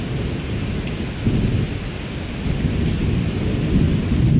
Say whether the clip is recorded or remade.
recorded